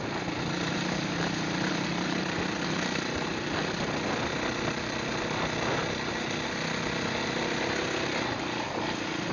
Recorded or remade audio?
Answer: recorded